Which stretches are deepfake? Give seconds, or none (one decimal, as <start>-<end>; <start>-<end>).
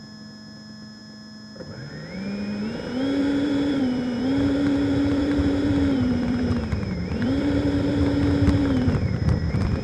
3.2-8.0; 8.6-9.8